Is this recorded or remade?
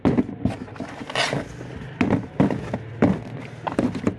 recorded